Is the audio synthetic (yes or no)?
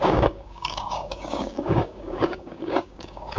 yes